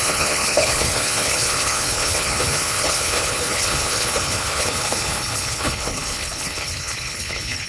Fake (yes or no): yes